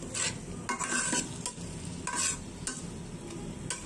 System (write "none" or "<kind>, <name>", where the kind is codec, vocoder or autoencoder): none